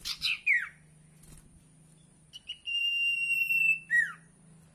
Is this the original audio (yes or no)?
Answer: yes